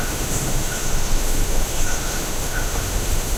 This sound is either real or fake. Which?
fake